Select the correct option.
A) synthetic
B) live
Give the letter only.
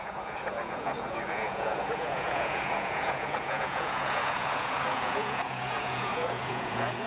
A